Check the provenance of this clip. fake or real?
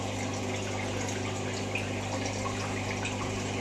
real